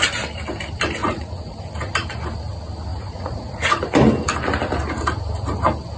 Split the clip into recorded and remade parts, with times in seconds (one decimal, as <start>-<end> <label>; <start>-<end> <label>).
0.0-1.0 recorded; 1.0-1.6 remade; 1.6-2.9 recorded; 2.9-3.7 remade; 3.7-6.0 recorded